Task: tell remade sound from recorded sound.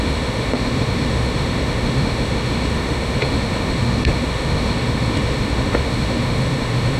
remade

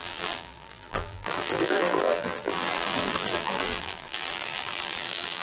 remade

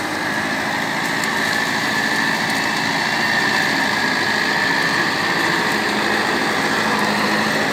recorded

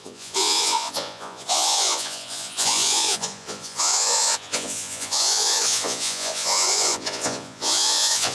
remade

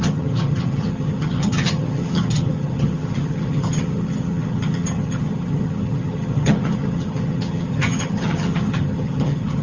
remade